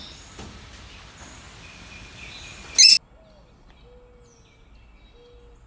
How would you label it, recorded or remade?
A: recorded